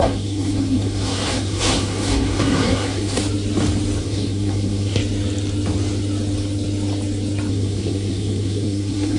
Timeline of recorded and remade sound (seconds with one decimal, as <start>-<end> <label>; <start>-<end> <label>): 0.0-3.2 remade; 3.2-4.0 recorded; 4.0-5.0 remade; 5.0-7.5 recorded; 7.5-9.2 remade